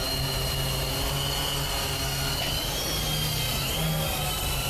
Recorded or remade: recorded